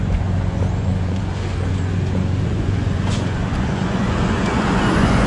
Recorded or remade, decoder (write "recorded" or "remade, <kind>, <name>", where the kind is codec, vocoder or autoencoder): remade, vocoder, Vocos